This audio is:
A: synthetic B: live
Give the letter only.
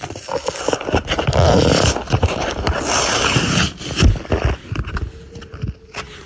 B